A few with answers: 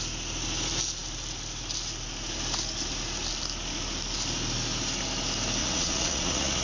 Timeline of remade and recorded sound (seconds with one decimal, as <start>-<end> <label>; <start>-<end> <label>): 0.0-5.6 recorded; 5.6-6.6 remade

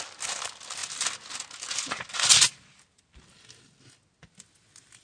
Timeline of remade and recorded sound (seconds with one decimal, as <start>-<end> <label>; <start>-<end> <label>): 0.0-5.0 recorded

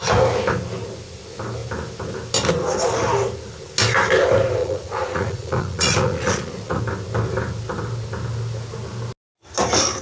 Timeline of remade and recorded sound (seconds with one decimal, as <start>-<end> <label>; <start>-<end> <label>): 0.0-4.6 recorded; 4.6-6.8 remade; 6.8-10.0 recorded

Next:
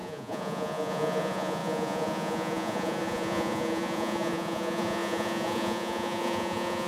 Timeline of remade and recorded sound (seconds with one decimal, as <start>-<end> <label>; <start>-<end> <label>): 0.0-6.9 remade

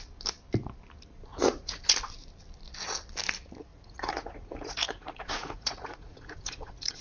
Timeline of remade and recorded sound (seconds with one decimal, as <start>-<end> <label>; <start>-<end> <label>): 0.0-1.3 recorded; 1.3-1.8 remade; 1.8-3.7 recorded; 3.7-7.0 remade

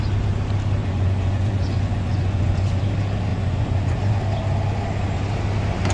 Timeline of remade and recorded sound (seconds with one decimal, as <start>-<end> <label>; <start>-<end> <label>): 0.0-0.8 recorded; 0.8-2.8 remade; 2.8-3.3 recorded; 3.3-4.2 remade; 4.2-5.9 recorded